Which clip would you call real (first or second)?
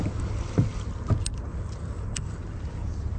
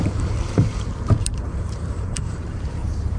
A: first